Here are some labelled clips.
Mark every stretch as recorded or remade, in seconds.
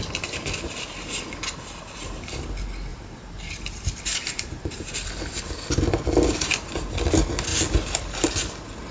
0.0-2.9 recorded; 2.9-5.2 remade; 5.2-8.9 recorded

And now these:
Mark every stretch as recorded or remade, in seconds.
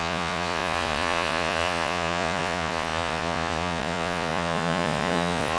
0.0-5.6 remade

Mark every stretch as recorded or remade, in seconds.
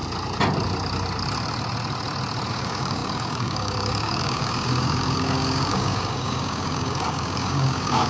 0.0-2.5 recorded; 2.5-8.1 remade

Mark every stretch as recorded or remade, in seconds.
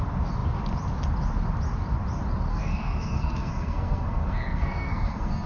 0.0-2.5 recorded; 2.5-5.5 remade